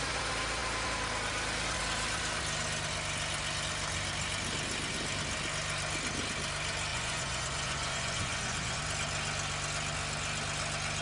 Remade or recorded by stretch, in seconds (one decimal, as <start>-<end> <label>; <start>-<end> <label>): 0.0-6.9 recorded; 6.9-8.8 remade; 8.8-11.0 recorded